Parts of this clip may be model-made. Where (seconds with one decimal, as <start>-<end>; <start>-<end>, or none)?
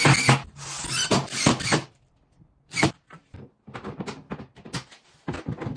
1.2-3.4